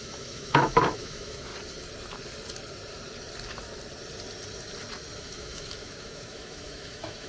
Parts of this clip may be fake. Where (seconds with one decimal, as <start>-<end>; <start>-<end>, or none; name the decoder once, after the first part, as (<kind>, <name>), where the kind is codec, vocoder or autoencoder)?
0.0-1.5 (autoencoder, DAC-VAE); 5.2-7.3